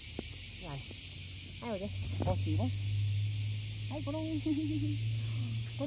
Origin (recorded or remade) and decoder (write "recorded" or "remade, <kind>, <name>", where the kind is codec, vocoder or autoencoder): recorded